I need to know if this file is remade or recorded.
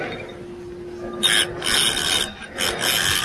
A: recorded